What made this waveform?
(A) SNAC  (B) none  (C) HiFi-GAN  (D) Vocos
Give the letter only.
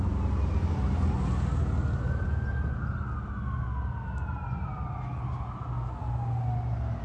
B